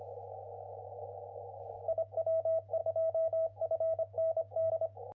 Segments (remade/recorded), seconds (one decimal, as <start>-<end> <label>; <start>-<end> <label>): 0.0-0.8 recorded; 0.8-1.8 remade; 1.8-2.8 recorded; 2.8-4.7 remade; 4.7-5.2 recorded